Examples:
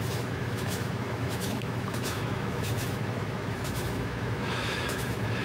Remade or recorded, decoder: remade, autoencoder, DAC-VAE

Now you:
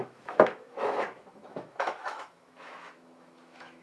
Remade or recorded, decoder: remade, autoencoder, DAC-VAE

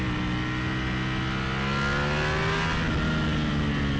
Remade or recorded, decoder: recorded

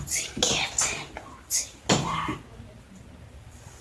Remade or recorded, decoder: recorded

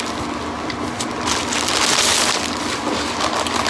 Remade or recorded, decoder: recorded